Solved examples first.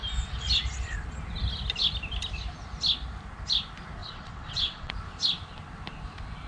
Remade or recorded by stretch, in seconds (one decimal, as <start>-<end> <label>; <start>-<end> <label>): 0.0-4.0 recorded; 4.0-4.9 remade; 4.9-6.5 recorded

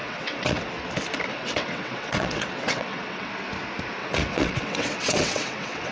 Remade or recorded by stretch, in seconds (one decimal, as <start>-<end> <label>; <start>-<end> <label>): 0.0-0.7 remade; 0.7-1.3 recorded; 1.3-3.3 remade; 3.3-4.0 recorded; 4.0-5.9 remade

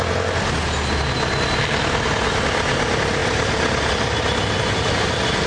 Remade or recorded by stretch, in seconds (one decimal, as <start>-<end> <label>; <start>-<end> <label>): 0.0-5.5 recorded

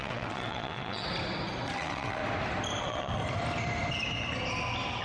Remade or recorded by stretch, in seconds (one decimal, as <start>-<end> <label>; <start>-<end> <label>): 0.0-1.1 remade; 1.1-1.7 recorded; 1.7-2.2 remade; 2.2-2.8 recorded; 2.8-3.2 remade; 3.2-5.0 recorded

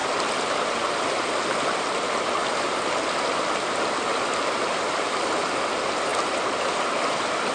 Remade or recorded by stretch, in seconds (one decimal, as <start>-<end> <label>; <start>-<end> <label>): 0.0-7.5 recorded

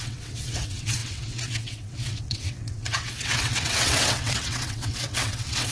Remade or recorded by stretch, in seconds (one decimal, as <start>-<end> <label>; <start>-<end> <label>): 0.0-5.7 remade

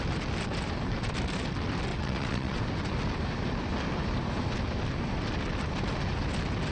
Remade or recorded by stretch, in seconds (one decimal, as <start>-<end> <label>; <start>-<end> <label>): 0.0-1.9 recorded; 1.9-2.6 remade; 2.6-6.7 recorded